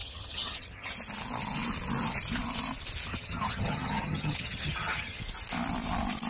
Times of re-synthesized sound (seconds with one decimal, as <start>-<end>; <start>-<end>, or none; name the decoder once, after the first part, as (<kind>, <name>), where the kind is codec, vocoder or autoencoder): 0.0-0.9 (vocoder, HiFi-GAN); 3.1-5.2